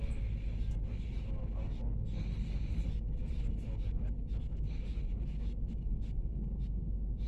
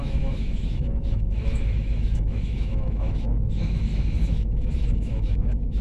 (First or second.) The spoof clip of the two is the second